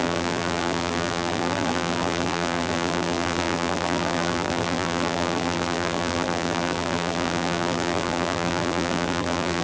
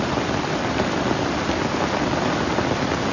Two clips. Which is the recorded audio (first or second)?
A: second